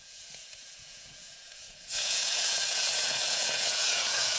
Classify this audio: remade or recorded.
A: remade